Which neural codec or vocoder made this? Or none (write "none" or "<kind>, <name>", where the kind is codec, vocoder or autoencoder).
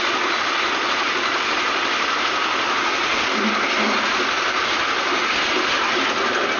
none